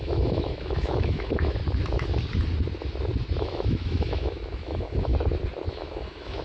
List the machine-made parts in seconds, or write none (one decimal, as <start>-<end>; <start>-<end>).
0.0-1.6; 3.4-5.1; 5.7-6.4